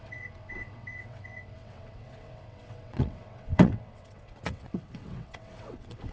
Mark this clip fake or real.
fake